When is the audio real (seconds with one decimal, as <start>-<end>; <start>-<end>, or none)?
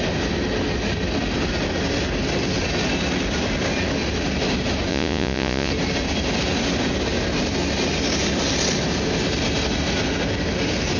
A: 0.0-4.9; 5.7-11.0